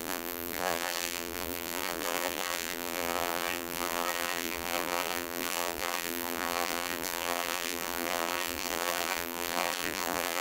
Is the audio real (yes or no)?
no